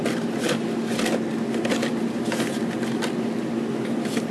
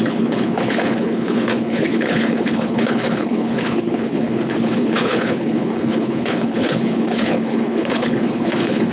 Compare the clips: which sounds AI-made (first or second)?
second